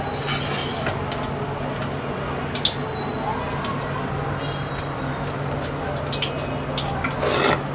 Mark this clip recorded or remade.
recorded